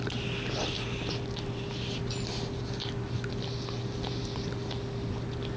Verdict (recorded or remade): recorded